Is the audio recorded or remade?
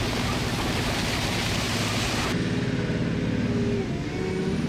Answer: recorded